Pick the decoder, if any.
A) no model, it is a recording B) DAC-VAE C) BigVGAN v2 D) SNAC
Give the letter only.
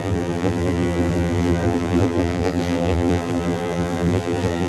C